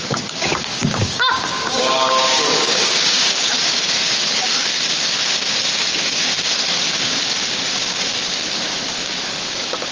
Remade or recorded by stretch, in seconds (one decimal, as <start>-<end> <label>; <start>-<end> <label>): 0.0-9.9 remade